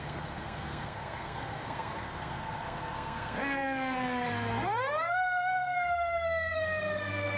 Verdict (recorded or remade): remade